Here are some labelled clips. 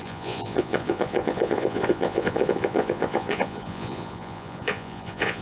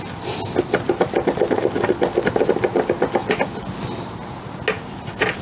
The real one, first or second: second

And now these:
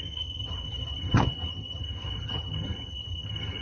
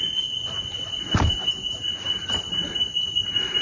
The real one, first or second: second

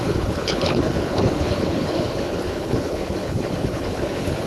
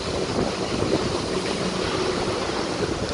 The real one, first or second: second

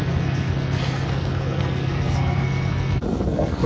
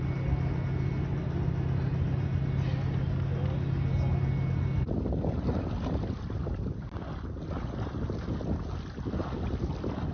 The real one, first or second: second